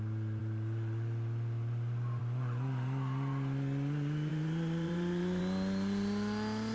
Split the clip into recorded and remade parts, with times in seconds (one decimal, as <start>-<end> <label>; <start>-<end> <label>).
0.0-4.3 recorded; 4.3-5.4 remade; 5.4-6.7 recorded